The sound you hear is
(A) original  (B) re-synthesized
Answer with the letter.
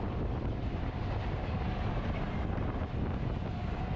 A